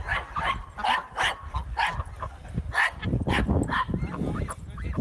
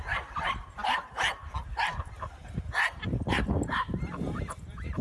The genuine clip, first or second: first